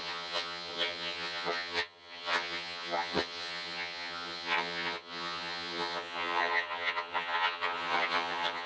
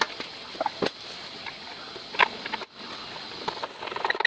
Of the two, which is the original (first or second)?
second